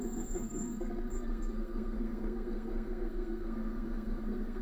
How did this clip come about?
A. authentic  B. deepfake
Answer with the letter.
B